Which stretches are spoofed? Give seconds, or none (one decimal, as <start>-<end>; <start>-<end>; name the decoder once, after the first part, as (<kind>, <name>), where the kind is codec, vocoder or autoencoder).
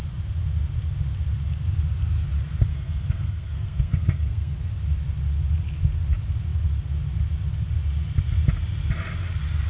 2.7-4.7 (codec, SNAC)